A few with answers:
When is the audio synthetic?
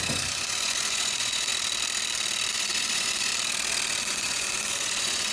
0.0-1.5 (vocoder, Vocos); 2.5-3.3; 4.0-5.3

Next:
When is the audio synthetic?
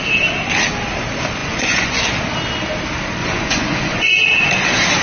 1.4-2.1 (vocoder, Vocos); 3.2-4.1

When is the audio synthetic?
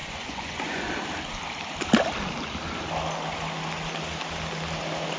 0.0-0.8 (vocoder, Vocos)